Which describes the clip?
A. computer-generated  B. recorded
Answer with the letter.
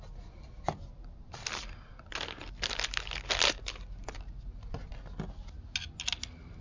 B